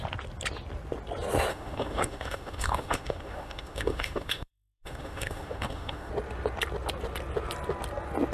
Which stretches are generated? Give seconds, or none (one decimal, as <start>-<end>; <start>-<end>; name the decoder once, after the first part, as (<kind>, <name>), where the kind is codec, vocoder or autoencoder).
1.5-6.1 (autoencoder, DAC-VAE)

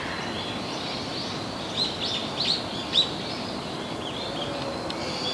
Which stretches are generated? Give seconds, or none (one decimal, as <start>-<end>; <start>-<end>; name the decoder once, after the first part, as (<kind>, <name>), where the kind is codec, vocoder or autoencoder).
none